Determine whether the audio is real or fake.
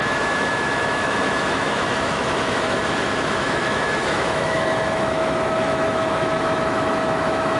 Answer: fake